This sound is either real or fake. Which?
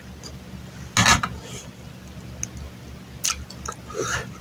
real